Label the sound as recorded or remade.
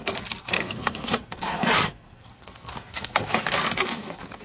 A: remade